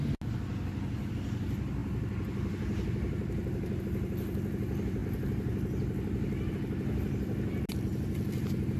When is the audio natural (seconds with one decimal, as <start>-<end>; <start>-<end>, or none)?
0.0-8.8